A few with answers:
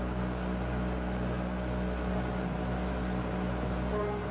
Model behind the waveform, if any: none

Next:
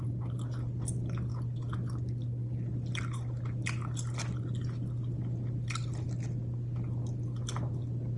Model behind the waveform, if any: none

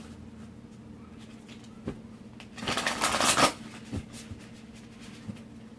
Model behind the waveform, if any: none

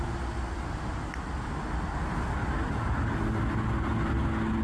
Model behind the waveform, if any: none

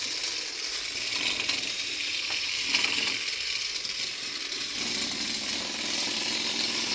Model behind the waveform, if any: none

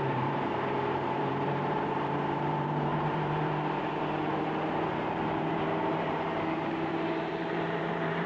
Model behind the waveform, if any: vocoder, BigVGAN v2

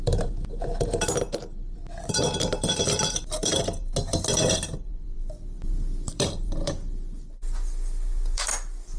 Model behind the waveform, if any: vocoder, BigVGAN v2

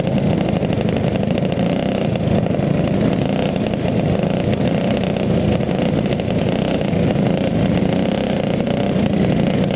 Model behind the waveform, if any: none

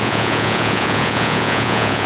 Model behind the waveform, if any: vocoder, Vocos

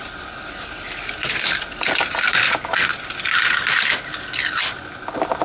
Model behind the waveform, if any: vocoder, BigVGAN v2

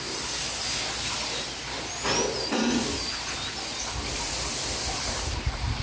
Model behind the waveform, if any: none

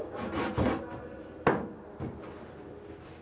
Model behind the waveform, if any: none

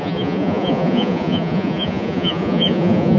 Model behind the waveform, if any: vocoder, Vocos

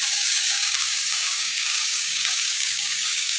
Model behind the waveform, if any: codec, DAC